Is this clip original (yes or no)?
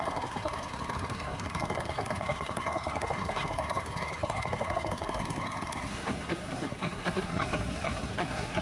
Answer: no